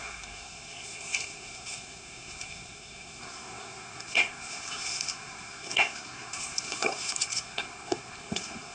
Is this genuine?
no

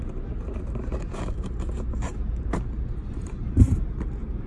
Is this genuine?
no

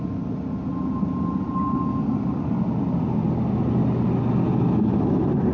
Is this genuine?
yes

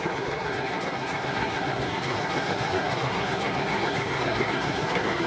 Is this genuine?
no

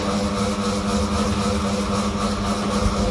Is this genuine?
yes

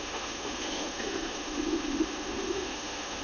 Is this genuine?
no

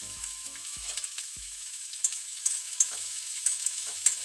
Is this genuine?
no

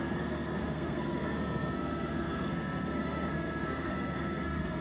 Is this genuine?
no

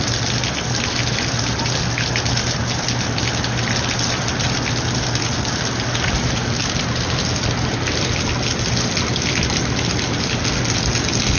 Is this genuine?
yes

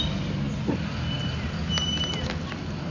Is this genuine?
yes